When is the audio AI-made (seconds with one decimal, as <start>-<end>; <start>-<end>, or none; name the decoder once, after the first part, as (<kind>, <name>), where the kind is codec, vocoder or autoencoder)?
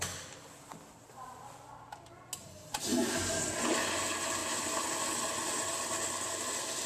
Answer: none